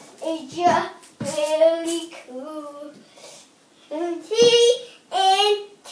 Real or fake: real